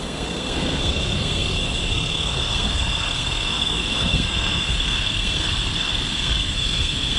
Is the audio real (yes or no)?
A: no